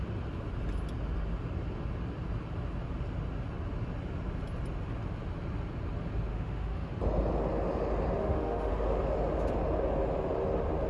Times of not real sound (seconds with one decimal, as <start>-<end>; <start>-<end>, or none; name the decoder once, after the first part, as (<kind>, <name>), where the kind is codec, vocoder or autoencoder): 6.3-6.9 (autoencoder, DAC-VAE); 8.2-8.7